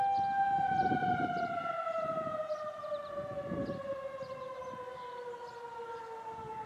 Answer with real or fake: real